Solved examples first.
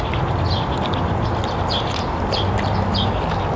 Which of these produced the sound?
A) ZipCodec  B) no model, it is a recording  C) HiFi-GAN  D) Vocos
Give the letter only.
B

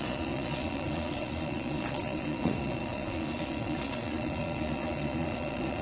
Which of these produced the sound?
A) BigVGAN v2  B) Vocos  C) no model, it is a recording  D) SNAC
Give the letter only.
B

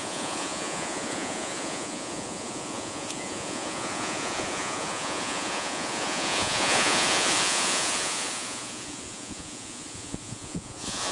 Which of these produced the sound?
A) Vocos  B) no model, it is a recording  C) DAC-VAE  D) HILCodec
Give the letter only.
A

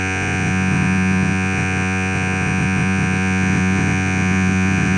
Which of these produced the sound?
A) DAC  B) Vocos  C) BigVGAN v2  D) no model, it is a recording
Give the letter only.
B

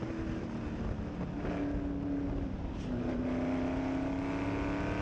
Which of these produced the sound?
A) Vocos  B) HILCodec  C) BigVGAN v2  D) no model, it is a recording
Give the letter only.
D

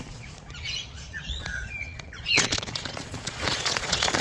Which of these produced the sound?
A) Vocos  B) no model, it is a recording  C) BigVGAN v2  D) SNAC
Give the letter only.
A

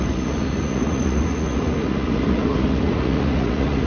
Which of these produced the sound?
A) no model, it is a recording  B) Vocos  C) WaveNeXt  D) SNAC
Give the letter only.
B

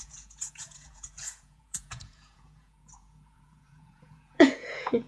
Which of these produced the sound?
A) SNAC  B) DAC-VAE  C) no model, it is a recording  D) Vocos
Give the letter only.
D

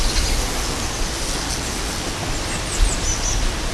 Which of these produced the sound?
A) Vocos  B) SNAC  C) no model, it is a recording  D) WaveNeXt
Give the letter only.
C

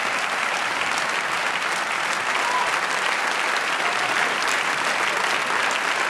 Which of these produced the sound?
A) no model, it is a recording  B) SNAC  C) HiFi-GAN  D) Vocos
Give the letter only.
A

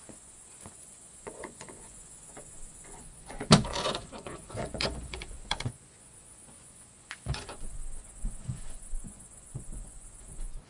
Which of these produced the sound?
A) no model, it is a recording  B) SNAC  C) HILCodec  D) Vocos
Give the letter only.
D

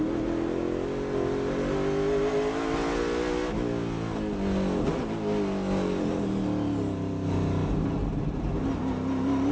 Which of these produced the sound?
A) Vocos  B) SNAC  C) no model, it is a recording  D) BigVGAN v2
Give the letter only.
C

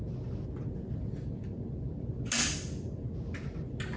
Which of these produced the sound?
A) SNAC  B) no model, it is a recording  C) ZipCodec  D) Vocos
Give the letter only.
B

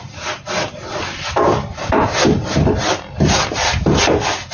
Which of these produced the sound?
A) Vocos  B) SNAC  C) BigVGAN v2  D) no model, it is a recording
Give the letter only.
D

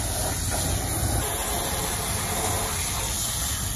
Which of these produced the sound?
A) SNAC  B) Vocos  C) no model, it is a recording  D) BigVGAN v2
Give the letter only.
C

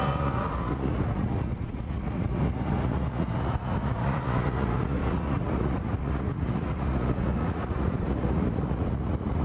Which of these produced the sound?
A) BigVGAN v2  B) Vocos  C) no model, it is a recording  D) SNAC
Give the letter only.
B